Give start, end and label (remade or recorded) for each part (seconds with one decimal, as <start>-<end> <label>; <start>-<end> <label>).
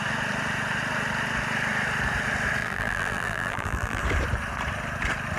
0.0-2.6 recorded; 2.6-4.0 remade; 4.0-5.4 recorded